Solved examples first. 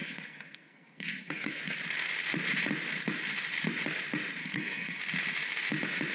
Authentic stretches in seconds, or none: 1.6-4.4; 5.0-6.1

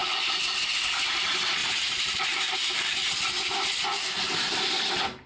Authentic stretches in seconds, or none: 0.6-1.6; 4.8-5.3

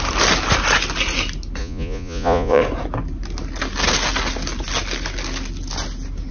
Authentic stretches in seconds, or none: 0.0-1.6; 2.6-6.3

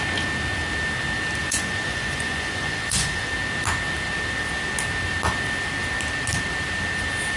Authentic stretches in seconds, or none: 0.0-1.4; 3.3-7.4

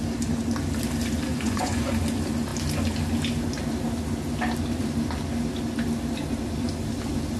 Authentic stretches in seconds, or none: 0.0-1.3; 1.9-7.4

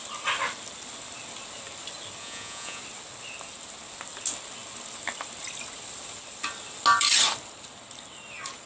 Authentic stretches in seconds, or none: 0.0-2.2; 2.8-8.7

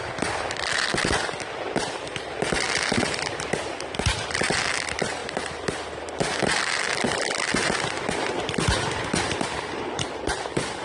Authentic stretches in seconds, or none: none